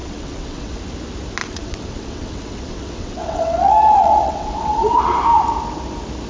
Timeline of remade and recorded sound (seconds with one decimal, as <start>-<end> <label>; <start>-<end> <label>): 0.0-0.8 remade; 0.8-1.4 recorded; 1.4-5.2 remade; 5.2-6.3 recorded